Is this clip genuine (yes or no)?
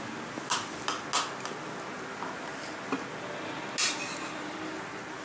yes